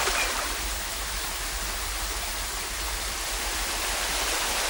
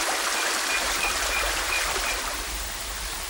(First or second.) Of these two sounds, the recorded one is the first